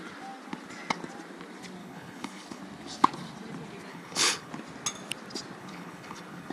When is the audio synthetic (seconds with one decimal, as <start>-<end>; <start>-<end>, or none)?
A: 1.8-2.6; 3.9-4.5; 5.6-6.5